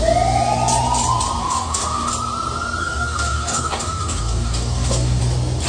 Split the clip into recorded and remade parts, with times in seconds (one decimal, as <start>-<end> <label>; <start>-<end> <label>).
0.0-1.4 recorded; 1.4-2.1 remade; 2.1-2.8 recorded; 2.8-5.2 remade; 5.2-5.7 recorded